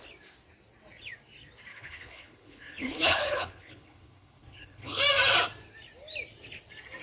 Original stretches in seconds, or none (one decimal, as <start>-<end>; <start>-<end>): 0.0-1.7; 5.0-7.0